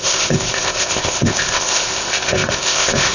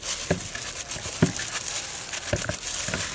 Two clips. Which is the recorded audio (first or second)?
second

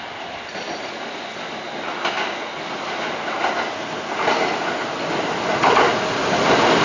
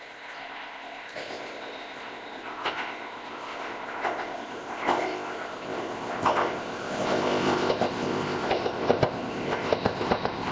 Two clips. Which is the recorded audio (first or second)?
first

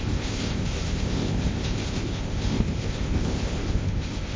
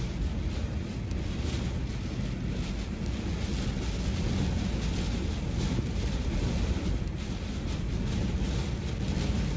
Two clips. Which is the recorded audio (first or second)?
second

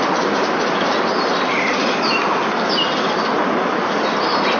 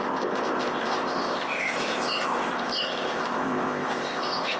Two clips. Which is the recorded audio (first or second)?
first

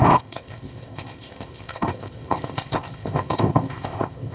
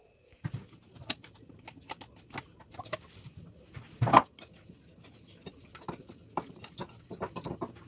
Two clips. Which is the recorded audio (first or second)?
second